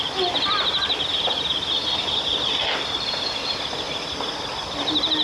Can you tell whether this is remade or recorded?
recorded